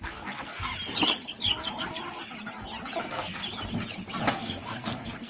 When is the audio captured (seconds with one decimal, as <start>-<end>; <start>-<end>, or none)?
0.7-3.0; 3.4-4.3